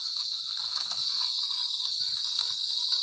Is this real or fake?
fake